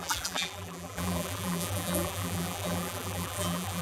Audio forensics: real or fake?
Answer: fake